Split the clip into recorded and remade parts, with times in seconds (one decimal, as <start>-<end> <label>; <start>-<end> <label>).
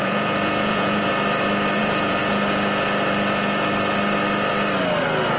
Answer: 0.0-1.1 remade; 1.1-1.8 recorded; 1.8-2.2 remade; 2.2-5.4 recorded